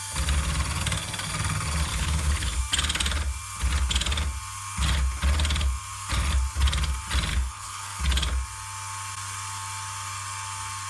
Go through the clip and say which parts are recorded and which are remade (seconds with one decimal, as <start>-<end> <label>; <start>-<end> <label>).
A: 0.0-1.9 recorded; 1.9-2.6 remade; 2.6-7.3 recorded; 7.3-8.0 remade; 8.0-10.9 recorded